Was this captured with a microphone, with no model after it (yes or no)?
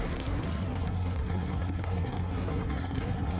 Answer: no